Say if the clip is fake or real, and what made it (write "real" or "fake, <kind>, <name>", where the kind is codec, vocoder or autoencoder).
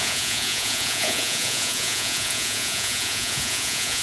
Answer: fake, vocoder, Vocos